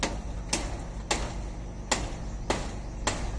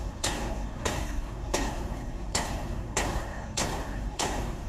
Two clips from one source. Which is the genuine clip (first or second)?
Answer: first